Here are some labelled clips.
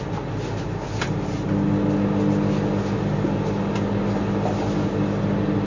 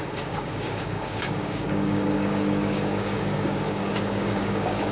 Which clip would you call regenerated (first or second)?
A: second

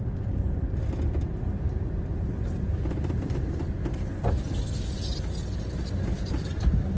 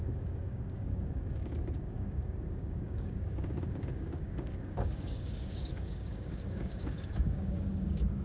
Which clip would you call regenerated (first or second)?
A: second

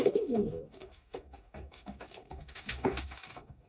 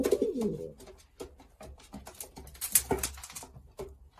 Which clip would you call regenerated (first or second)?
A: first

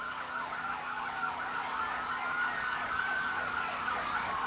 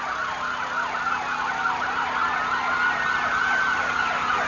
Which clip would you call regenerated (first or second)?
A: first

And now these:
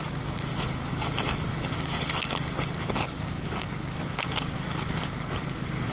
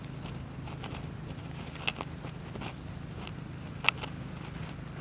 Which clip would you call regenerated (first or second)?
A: first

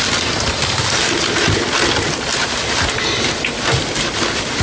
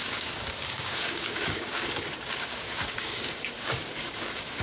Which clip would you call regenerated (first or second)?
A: second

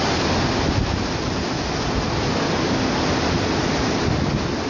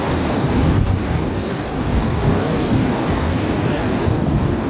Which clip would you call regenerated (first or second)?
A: second